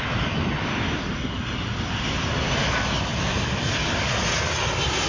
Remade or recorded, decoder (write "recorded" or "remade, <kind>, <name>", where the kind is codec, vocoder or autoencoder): recorded